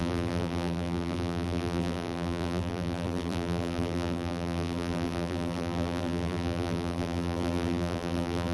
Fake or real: fake